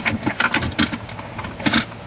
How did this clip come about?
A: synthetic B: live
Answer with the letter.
B